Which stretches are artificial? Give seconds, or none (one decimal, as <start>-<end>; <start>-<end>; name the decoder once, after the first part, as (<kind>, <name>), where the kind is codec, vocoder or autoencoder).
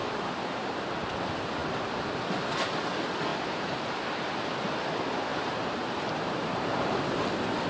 0.0-1.0 (vocoder, BigVGAN v2); 3.3-3.8; 5.3-7.0